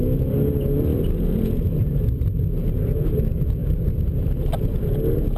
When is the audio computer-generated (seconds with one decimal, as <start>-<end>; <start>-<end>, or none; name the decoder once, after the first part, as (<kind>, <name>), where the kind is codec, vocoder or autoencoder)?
0.9-1.7 (vocoder, BigVGAN v2)